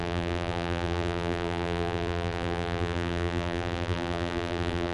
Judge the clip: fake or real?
fake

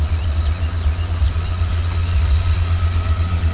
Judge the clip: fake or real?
fake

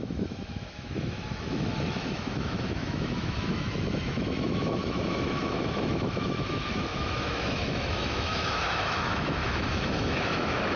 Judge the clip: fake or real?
fake